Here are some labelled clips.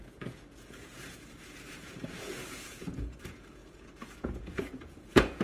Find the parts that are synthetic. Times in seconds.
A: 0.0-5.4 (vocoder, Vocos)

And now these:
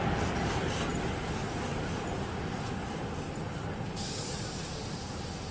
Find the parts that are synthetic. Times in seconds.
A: none

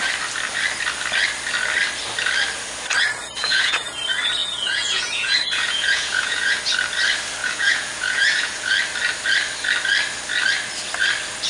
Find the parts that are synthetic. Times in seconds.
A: 3.4-4.0 (vocoder, Vocos); 4.4-6.6; 7.4-8.7

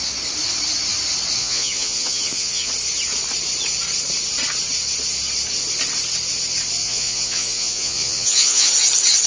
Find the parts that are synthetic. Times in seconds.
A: 1.4-2.7 (vocoder, Vocos); 6.8-8.7

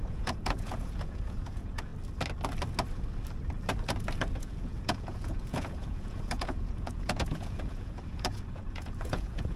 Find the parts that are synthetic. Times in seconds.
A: 0.0-1.9 (vocoder, Vocos); 4.4-9.6